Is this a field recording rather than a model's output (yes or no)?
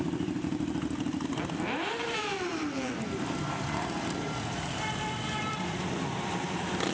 no